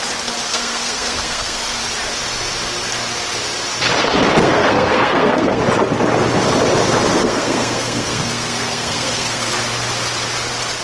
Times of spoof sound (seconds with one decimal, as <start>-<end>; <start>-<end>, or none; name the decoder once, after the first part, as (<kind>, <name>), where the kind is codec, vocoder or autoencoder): 0.5-1.8 (codec, SNAC); 4.4-5.6; 7.2-9.5